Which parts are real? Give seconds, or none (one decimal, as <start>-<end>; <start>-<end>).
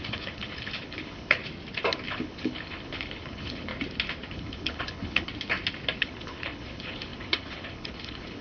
1.4-2.1; 3.7-4.3; 5.3-6.0